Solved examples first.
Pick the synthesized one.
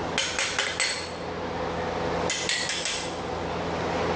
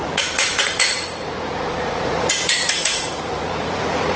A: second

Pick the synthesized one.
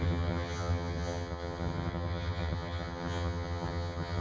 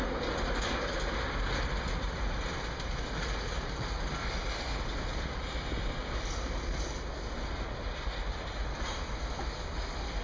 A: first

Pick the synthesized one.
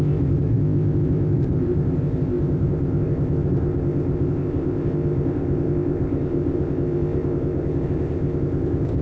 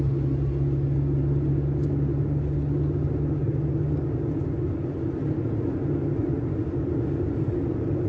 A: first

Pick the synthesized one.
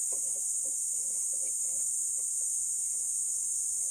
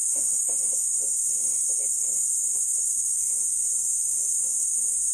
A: second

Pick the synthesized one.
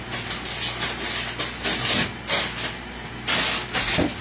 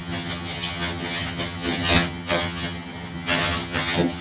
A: second